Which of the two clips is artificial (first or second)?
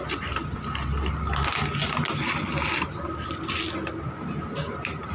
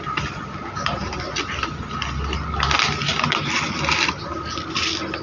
second